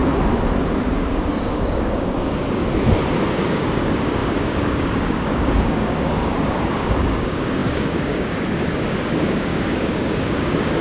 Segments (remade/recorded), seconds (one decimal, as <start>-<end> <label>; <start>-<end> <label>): 0.0-0.9 recorded; 0.9-2.6 remade; 2.6-3.3 recorded; 3.3-10.8 remade